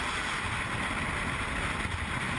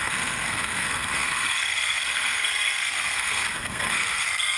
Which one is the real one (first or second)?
first